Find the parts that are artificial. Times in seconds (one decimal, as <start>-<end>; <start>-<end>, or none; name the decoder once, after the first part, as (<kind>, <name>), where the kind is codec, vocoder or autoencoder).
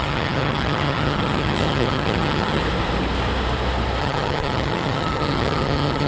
0.0-2.6 (vocoder, HiFi-GAN); 4.0-6.1